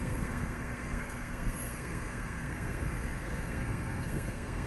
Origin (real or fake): fake